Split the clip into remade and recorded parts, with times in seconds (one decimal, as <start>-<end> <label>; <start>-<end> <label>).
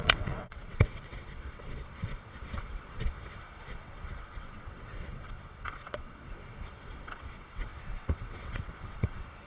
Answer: 0.0-9.5 remade